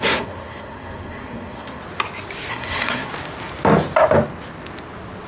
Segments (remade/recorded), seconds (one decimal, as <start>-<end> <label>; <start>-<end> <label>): 0.0-1.8 remade; 1.8-2.5 recorded; 2.5-3.1 remade; 3.1-5.3 recorded